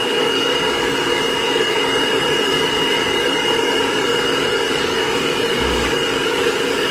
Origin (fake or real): fake